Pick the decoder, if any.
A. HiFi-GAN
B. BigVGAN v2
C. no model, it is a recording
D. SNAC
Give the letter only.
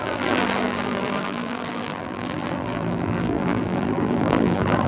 B